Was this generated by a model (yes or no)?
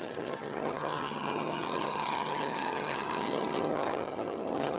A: yes